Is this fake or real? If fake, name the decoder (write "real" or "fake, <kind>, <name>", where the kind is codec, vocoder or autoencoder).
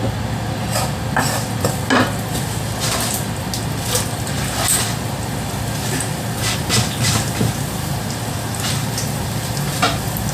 real